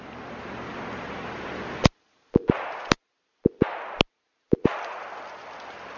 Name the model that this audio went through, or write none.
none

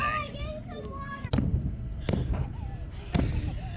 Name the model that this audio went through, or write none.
none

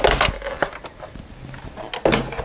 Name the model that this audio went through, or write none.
none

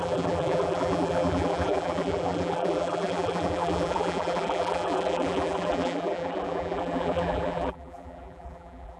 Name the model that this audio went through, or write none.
vocoder, BigVGAN v2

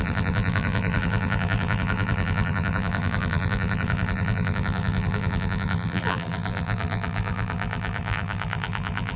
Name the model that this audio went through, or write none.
vocoder, BigVGAN v2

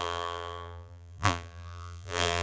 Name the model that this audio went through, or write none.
vocoder, BigVGAN v2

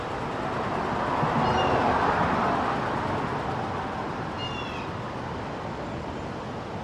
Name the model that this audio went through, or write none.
none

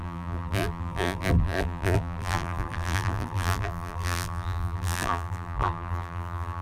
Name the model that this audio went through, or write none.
vocoder, BigVGAN v2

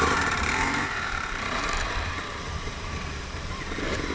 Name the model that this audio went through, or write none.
vocoder, BigVGAN v2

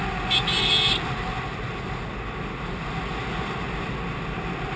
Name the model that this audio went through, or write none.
none